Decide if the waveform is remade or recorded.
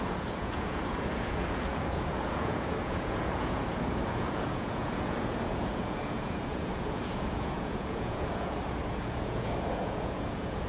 remade